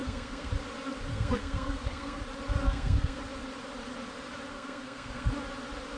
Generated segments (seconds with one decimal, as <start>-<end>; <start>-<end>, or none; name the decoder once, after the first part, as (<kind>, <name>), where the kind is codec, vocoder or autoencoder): 0.0-0.5 (codec, SNAC); 1.1-2.2; 2.6-3.2; 4.5-5.3